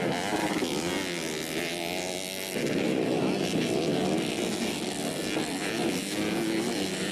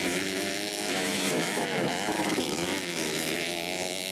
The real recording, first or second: first